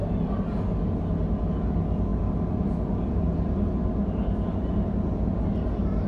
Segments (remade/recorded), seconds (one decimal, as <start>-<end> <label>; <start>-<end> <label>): 0.0-6.1 recorded